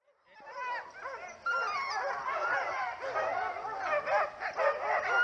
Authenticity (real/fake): real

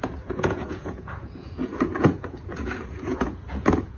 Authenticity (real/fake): fake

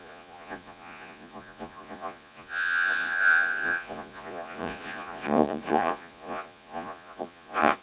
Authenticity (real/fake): fake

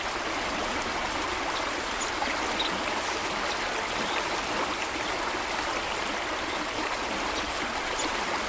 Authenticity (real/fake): real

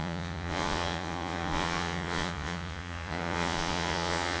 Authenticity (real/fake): fake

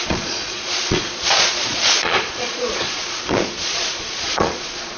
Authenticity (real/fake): fake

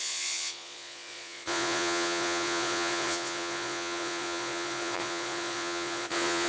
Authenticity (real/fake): fake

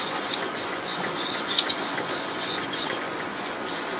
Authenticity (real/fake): fake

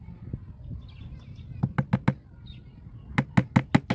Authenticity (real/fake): real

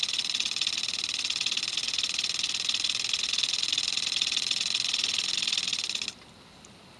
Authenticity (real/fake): real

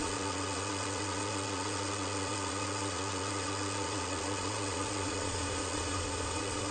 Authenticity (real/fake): fake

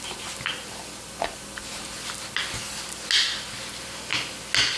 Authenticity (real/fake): real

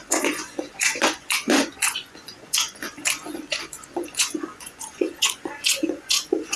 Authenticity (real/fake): fake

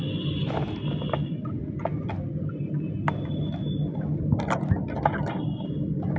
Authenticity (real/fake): real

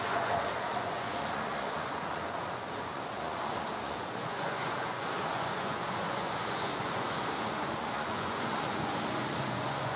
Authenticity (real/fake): fake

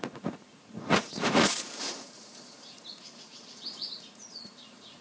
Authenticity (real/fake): fake